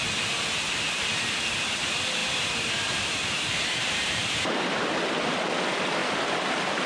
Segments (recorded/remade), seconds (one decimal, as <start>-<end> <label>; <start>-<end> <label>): 0.0-2.2 recorded; 2.2-4.9 remade; 4.9-6.9 recorded